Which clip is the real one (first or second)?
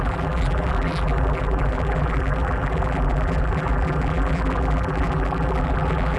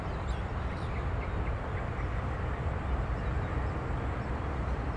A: second